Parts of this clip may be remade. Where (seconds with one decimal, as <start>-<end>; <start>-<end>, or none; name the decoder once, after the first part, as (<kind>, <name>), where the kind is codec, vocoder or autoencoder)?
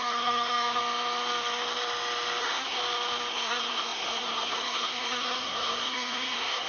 0.0-0.8 (codec, SNAC); 2.4-2.8; 3.3-6.7